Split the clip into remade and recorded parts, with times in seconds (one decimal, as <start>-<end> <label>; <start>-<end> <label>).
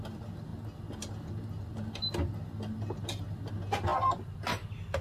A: 0.0-5.0 recorded